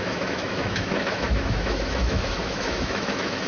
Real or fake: fake